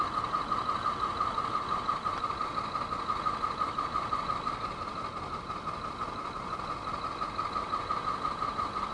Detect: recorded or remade recorded